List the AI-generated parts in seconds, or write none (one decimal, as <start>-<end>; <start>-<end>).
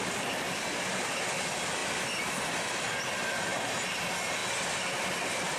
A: 3.5-4.0